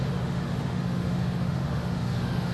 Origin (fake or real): fake